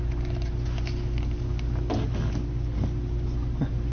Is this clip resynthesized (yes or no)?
no